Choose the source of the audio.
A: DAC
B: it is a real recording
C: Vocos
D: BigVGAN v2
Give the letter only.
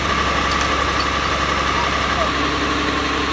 B